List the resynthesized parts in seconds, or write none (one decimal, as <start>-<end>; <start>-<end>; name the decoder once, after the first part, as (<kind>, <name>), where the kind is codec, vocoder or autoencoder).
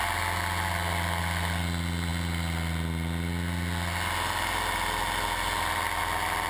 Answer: none